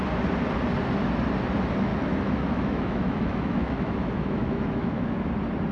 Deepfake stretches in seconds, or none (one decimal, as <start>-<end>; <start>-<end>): 1.9-5.3